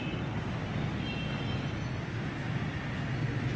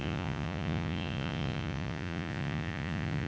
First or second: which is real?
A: first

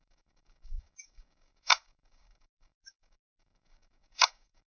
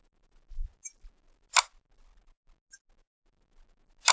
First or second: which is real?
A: second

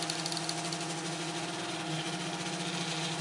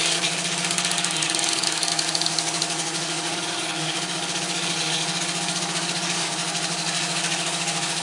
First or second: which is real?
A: first